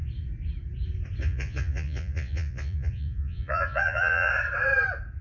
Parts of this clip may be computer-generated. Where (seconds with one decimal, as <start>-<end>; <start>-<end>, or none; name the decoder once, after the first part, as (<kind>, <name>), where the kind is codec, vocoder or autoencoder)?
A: 1.2-4.3 (vocoder, Vocos)